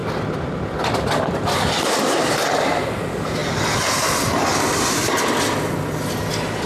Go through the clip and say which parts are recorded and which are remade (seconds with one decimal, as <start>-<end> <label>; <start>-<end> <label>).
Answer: 0.0-6.7 recorded